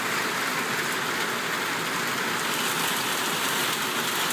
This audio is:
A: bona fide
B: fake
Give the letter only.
A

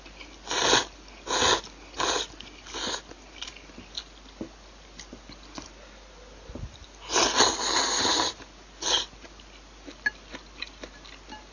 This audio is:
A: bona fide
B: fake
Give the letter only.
A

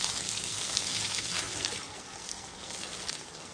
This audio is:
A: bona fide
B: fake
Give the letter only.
B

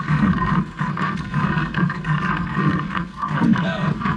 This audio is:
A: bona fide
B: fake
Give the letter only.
B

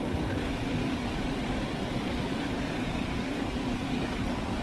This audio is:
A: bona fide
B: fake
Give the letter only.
A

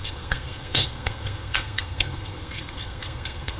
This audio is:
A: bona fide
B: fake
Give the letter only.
B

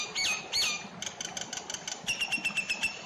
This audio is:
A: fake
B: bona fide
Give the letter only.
B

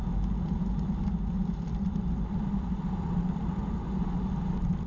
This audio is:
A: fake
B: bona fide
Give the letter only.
B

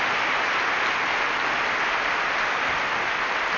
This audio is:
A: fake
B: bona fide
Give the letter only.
B